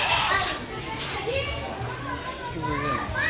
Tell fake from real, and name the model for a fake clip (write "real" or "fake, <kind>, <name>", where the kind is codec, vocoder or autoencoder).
real